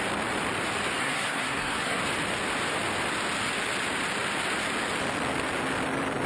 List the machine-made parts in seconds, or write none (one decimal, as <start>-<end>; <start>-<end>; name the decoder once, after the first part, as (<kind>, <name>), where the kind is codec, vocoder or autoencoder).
1.0-2.0 (codec, SNAC)